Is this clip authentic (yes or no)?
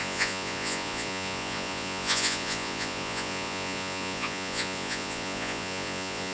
no